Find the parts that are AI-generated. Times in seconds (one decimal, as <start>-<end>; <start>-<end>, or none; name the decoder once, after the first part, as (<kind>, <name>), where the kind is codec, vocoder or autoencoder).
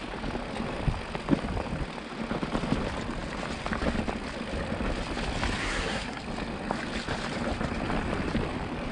5.6-6.2 (codec, SNAC)